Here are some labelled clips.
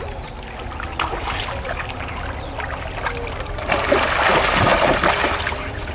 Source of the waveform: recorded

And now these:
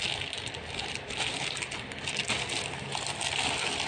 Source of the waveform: recorded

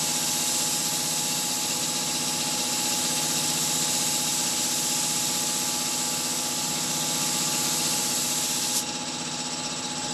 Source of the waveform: recorded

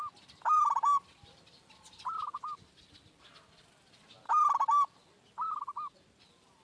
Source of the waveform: recorded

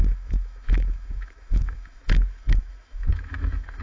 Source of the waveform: remade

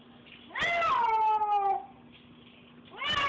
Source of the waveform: recorded